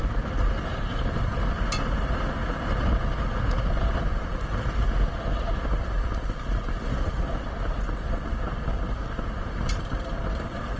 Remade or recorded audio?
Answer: recorded